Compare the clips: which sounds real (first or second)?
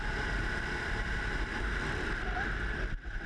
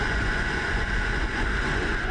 first